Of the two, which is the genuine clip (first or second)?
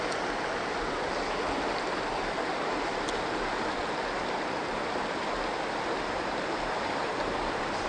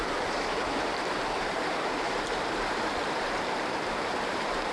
first